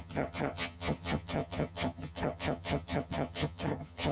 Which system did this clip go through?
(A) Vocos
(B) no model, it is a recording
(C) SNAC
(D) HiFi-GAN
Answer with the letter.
D